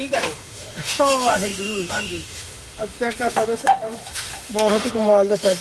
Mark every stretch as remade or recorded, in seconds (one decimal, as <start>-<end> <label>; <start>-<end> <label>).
0.0-5.6 remade